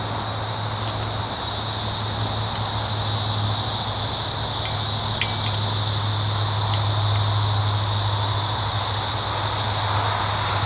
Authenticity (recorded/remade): recorded